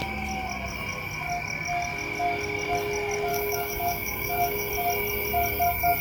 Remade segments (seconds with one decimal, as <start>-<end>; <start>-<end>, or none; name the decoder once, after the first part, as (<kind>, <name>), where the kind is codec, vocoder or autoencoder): 3.3-4.7 (autoencoder, DAC-VAE)